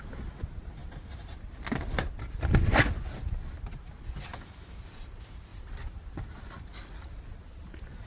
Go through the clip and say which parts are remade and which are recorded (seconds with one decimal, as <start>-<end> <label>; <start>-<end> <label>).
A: 0.0-8.1 recorded